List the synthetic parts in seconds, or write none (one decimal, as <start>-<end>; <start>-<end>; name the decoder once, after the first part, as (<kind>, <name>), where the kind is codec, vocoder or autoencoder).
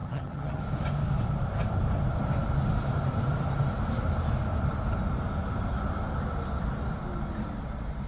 0.0-0.6 (vocoder, HiFi-GAN)